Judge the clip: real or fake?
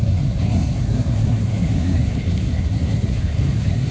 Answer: fake